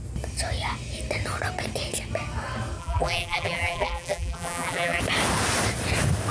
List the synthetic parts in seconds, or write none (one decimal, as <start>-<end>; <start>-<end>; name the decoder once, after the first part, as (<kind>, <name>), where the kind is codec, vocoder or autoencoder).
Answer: 2.8-5.0 (vocoder, BigVGAN v2)